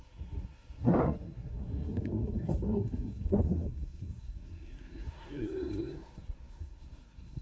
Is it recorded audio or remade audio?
remade